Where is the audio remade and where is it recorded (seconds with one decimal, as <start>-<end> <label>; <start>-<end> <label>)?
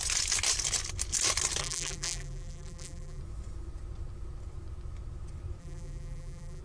0.0-1.6 recorded; 1.6-3.2 remade; 3.2-5.6 recorded; 5.6-6.6 remade